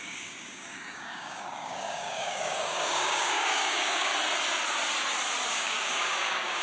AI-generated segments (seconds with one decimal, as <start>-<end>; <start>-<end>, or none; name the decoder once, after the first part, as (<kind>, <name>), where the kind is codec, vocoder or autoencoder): 0.0-4.1 (codec, DAC); 5.5-6.6